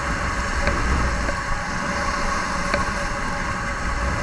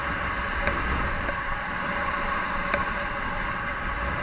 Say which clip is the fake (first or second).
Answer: second